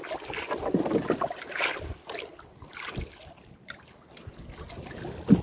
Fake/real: real